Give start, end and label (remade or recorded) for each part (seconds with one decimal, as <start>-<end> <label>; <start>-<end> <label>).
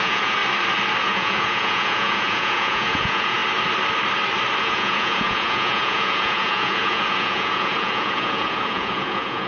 0.0-0.4 remade; 0.4-1.0 recorded; 1.0-3.4 remade; 3.4-4.6 recorded; 4.6-9.5 remade